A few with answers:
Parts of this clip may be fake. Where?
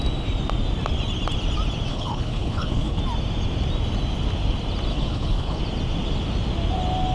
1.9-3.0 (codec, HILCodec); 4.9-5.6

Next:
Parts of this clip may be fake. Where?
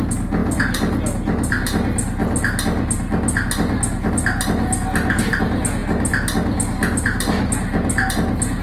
none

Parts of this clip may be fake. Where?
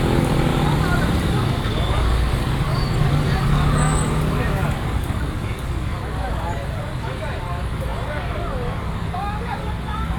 0.0-0.5 (codec, DAC); 1.2-10.2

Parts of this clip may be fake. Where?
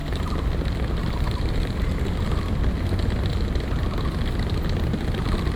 1.0-1.9 (vocoder, BigVGAN v2)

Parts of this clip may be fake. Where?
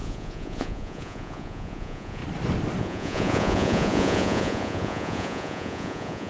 0.0-2.2 (vocoder, Vocos); 2.8-6.3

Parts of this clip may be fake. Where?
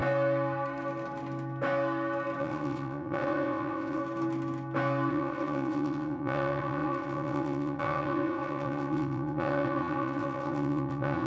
2.4-4.0 (vocoder, WaveNeXt); 5.1-11.3